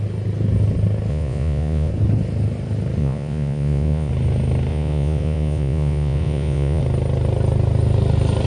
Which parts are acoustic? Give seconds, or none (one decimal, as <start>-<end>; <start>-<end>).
0.0-1.1; 1.9-3.0; 4.1-4.7; 6.8-8.5